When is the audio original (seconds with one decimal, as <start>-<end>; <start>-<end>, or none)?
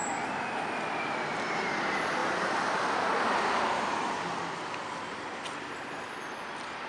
0.6-2.2; 6.3-6.9